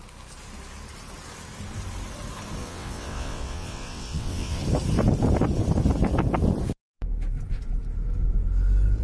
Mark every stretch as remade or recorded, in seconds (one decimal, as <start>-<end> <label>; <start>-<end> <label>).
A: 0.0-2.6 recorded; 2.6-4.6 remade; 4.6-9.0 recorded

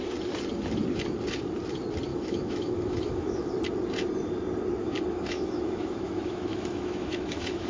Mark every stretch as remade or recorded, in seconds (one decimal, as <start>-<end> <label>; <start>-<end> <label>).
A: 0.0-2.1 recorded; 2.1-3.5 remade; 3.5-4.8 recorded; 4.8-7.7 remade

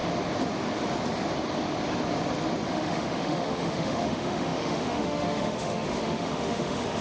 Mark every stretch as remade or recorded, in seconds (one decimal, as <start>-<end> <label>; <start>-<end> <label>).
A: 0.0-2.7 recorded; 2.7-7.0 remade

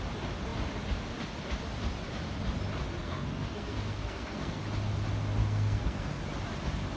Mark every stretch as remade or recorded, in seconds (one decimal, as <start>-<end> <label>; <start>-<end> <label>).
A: 0.0-3.0 recorded; 3.0-4.6 remade; 4.6-5.4 recorded; 5.4-6.2 remade; 6.2-7.0 recorded